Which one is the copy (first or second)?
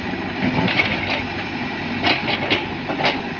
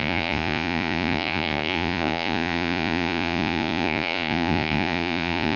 second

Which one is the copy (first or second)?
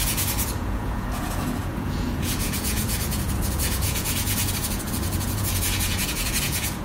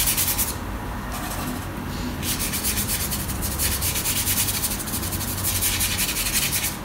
first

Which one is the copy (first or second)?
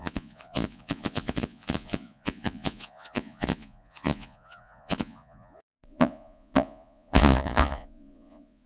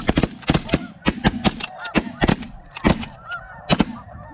first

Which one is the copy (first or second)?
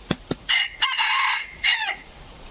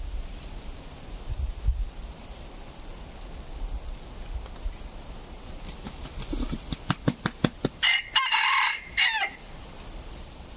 first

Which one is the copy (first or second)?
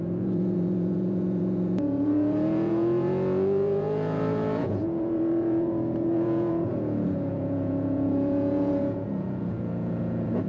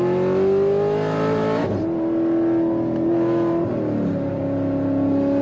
first